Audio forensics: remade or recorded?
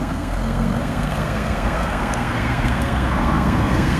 remade